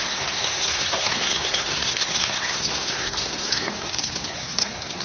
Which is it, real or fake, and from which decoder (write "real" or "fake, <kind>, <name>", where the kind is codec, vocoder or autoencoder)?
fake, codec, SNAC